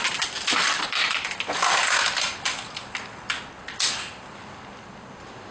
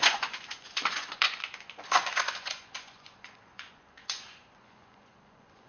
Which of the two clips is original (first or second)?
first